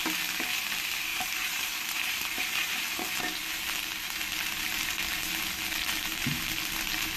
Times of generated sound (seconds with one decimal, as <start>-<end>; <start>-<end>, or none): 1.1-3.2